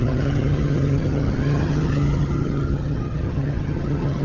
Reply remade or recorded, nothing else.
remade